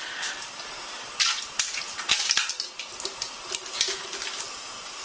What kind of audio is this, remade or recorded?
recorded